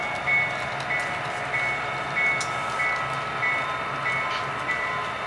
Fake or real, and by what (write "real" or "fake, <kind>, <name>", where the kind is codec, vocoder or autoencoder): real